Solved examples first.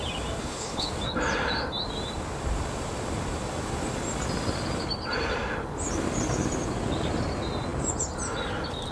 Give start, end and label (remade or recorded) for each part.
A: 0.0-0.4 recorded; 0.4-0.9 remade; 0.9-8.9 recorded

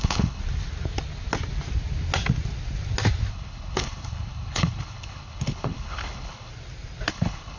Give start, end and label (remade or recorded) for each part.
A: 0.0-0.4 remade; 0.4-3.3 recorded; 3.3-6.5 remade; 6.5-7.1 recorded; 7.1-7.6 remade

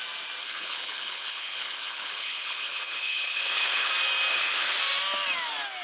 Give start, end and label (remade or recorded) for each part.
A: 0.0-0.4 recorded; 0.4-3.9 remade; 3.9-4.3 recorded; 4.3-4.8 remade; 4.8-5.8 recorded

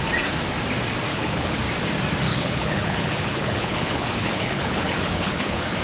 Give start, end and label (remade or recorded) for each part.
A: 0.0-1.1 recorded; 1.1-1.6 remade; 1.6-2.3 recorded; 2.3-5.8 remade

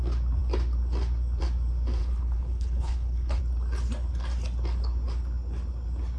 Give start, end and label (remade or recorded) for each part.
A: 0.0-2.0 recorded; 2.0-3.4 remade; 3.4-6.2 recorded

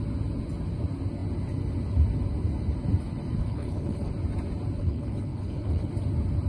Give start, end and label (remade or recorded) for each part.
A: 0.0-3.4 recorded; 3.4-4.1 remade; 4.1-4.8 recorded; 4.8-5.9 remade; 5.9-6.5 recorded

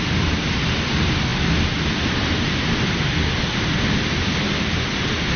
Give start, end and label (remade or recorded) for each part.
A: 0.0-5.4 recorded

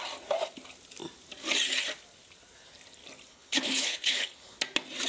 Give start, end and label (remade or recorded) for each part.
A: 0.0-3.3 recorded; 3.3-4.6 remade; 4.6-5.1 recorded